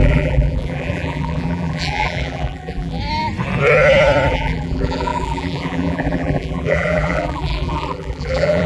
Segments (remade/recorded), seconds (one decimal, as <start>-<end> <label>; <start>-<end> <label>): 0.0-3.0 remade; 3.0-4.3 recorded; 4.3-8.7 remade